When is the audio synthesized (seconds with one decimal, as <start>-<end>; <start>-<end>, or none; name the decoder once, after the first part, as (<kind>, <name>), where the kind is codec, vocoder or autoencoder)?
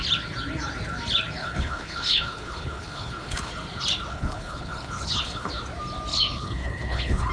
1.4-3.5 (codec, HILCodec); 4.1-5.5; 6.1-7.3